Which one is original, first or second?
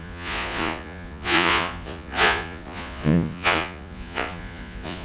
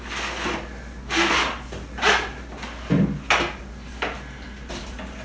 second